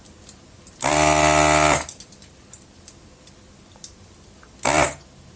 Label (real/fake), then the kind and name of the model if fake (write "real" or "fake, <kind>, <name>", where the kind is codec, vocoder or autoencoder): fake, vocoder, BigVGAN v2